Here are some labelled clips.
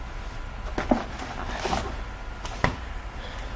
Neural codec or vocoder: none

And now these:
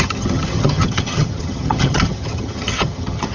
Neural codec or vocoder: vocoder, HiFi-GAN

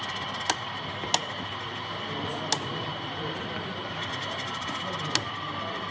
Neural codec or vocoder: none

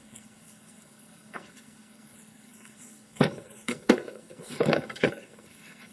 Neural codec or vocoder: codec, SNAC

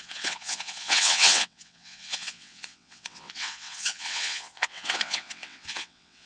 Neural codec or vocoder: vocoder, WaveNeXt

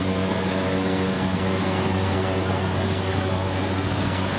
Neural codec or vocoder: codec, SNAC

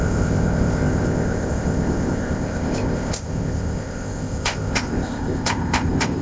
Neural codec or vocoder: codec, ZipCodec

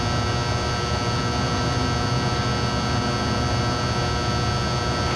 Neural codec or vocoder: none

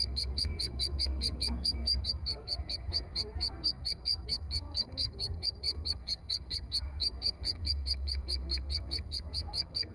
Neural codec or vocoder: codec, SNAC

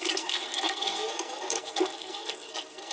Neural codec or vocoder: codec, SNAC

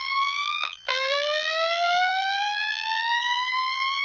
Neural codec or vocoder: vocoder, BigVGAN v2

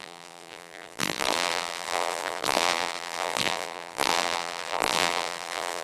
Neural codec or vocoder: vocoder, BigVGAN v2